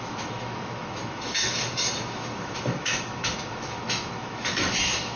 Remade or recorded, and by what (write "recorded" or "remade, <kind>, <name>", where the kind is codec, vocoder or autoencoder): remade, autoencoder, DAC-VAE